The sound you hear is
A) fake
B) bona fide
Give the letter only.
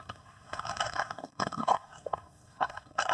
A